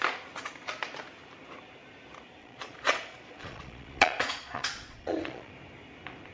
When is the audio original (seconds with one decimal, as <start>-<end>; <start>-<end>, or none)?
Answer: 0.0-2.4; 5.5-6.3